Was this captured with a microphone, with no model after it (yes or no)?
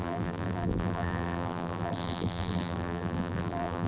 no